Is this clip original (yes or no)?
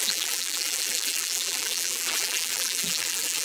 no